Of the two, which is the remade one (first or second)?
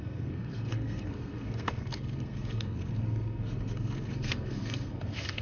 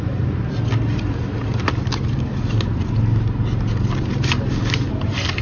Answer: first